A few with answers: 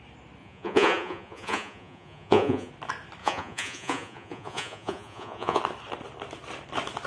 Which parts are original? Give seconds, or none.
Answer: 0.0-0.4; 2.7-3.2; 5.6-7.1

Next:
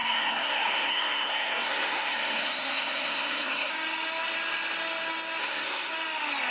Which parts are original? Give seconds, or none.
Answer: 3.7-5.4; 5.9-6.5